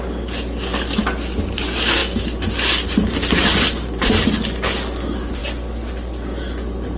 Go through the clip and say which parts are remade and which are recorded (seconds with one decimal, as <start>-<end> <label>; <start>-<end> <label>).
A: 0.0-7.0 recorded